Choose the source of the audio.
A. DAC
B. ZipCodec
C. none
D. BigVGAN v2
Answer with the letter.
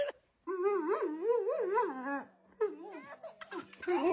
C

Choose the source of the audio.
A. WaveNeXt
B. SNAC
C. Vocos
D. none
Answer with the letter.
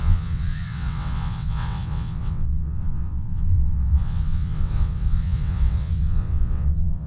A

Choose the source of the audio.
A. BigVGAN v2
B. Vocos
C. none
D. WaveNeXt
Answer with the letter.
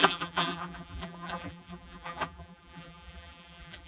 A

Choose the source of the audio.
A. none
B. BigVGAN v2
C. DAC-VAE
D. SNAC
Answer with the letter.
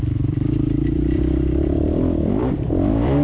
B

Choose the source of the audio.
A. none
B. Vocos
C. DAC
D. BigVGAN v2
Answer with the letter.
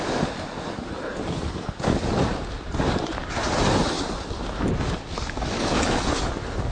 A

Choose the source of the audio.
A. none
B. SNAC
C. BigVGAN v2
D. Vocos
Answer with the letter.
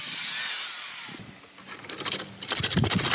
A